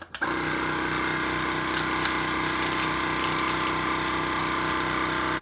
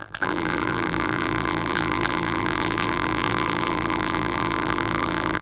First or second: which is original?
first